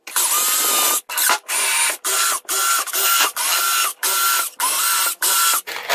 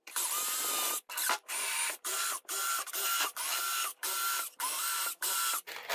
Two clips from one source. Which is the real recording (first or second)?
first